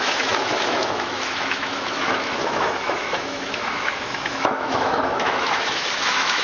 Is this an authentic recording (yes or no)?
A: no